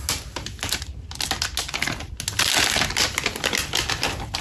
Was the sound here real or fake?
real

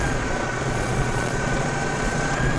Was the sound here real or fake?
fake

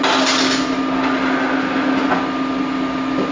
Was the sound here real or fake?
real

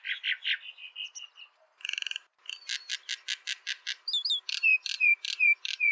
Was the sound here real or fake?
real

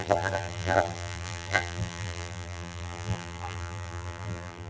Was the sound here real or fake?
fake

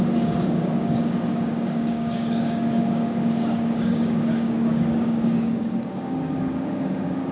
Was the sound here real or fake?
fake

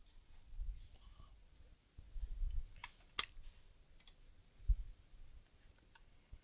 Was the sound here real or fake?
real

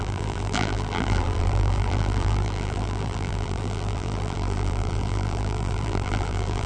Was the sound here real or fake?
fake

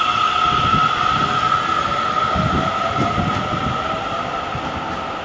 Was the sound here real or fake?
real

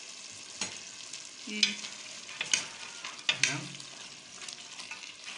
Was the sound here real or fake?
real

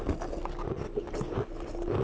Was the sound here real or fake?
real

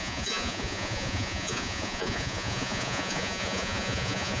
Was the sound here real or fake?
fake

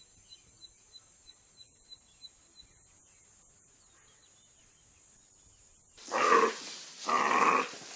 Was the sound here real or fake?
real